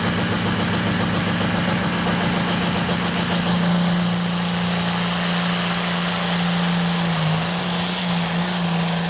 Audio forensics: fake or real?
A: real